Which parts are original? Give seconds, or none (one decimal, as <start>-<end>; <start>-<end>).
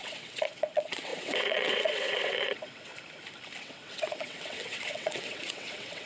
2.9-3.6